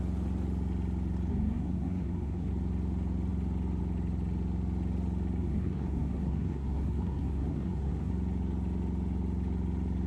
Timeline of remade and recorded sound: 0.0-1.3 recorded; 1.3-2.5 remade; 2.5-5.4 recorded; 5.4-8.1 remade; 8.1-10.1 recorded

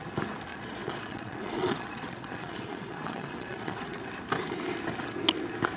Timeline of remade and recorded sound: 0.0-0.5 recorded; 0.5-4.0 remade; 4.0-5.8 recorded

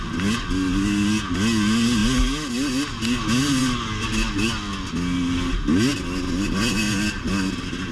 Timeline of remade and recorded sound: 0.0-7.9 recorded

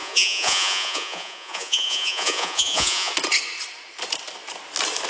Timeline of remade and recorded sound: 0.0-3.1 remade; 3.1-5.1 recorded

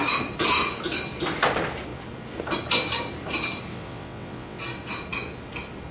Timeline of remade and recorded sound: 0.0-3.7 recorded; 3.7-4.6 remade; 4.6-5.9 recorded

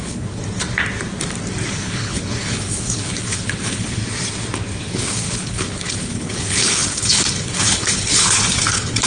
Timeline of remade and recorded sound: 0.0-0.4 remade; 0.4-1.7 recorded; 1.7-4.0 remade; 4.0-4.8 recorded; 4.8-9.1 remade

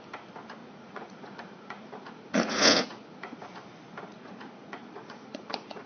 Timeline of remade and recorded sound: 0.0-0.6 recorded; 0.6-3.4 remade; 3.4-4.1 recorded; 4.1-5.9 remade